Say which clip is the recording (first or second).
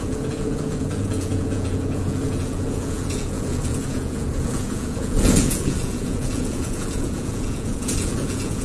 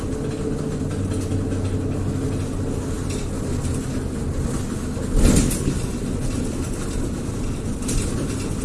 second